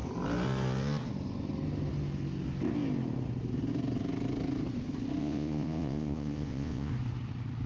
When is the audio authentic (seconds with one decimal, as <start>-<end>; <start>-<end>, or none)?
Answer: 0.0-5.2; 6.9-7.7